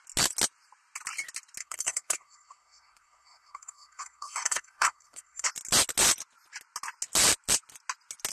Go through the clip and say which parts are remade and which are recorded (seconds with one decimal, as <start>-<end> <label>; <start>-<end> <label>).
0.0-1.6 recorded; 1.6-5.5 remade; 5.5-8.3 recorded